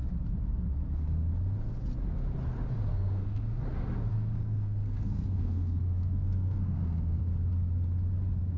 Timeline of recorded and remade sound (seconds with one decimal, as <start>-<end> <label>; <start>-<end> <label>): 0.0-2.9 recorded; 2.9-3.6 remade; 3.6-4.1 recorded; 4.1-7.2 remade; 7.2-8.6 recorded